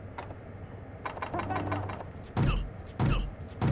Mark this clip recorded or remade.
recorded